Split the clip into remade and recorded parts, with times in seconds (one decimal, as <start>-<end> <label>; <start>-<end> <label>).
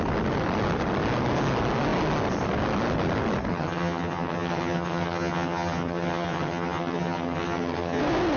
0.0-3.5 recorded; 3.5-8.0 remade; 8.0-8.4 recorded